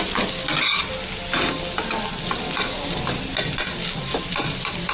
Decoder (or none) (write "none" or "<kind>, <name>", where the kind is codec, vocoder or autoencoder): none